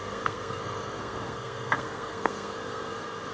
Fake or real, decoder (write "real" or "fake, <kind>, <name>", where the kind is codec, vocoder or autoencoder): fake, codec, SNAC